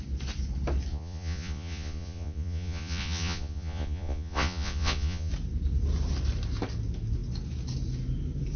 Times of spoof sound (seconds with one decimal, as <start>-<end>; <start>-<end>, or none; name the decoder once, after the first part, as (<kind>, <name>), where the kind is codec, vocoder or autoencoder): 0.9-5.3 (vocoder, Vocos)